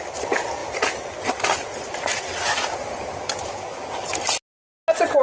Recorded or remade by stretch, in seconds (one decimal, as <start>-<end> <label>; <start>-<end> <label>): 0.0-5.2 recorded